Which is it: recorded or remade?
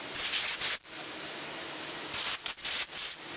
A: recorded